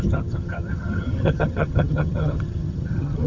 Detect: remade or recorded remade